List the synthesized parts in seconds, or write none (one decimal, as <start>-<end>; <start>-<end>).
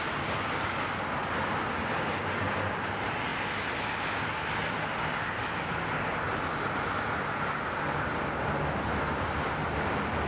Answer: none